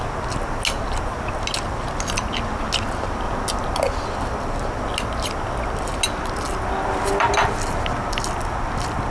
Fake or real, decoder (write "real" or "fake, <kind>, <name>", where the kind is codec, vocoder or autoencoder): real